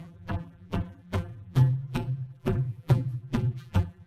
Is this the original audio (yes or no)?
no